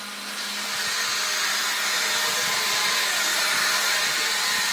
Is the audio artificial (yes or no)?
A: no